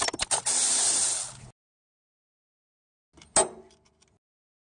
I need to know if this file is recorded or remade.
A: recorded